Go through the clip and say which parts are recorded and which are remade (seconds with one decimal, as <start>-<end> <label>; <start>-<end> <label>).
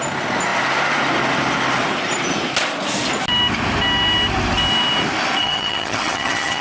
0.0-5.4 recorded; 5.4-6.6 remade